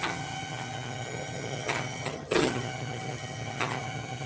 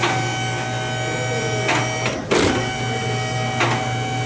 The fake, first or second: first